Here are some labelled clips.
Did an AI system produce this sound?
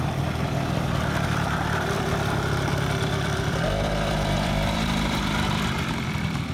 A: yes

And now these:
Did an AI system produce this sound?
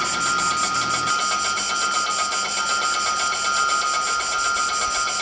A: no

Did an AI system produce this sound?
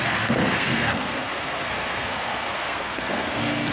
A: yes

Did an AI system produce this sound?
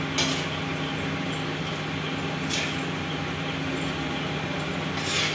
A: no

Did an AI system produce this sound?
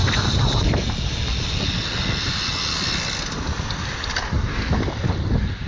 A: no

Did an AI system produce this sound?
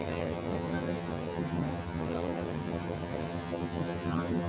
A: yes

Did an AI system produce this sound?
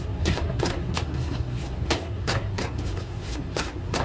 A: yes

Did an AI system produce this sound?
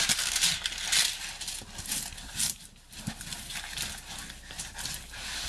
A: no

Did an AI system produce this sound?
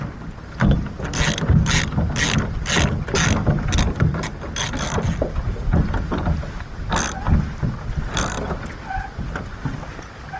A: no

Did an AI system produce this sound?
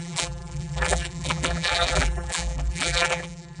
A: yes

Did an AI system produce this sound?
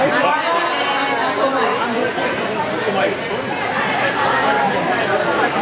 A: no